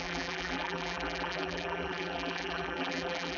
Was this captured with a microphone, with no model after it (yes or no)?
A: no